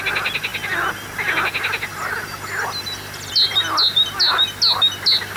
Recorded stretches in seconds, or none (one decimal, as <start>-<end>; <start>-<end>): 0.0-5.4